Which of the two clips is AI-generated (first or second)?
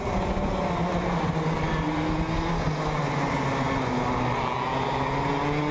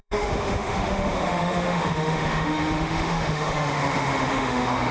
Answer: second